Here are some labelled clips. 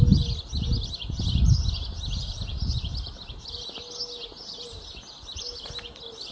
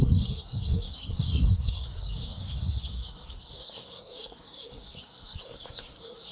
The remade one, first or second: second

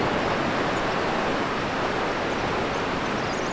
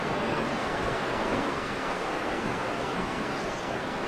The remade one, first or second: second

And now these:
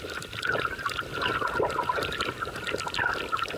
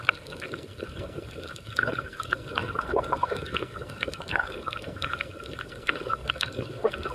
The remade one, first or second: second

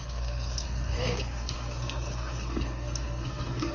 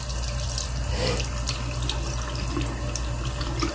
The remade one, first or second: first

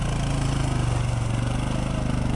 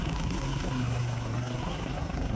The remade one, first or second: second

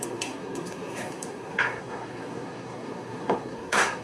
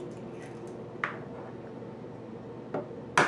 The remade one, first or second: first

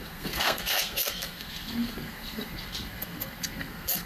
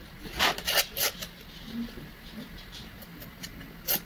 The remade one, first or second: first